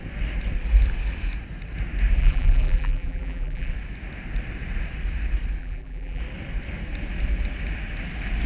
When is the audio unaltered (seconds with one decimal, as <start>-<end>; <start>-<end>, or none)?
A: 0.0-2.2; 3.7-5.6; 6.2-8.5